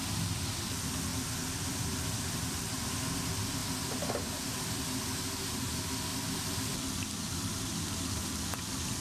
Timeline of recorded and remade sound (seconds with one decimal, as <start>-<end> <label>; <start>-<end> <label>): 0.0-1.1 recorded; 1.1-2.5 remade; 2.5-3.6 recorded; 3.6-4.8 remade; 4.8-6.1 recorded; 6.1-8.3 remade; 8.3-9.0 recorded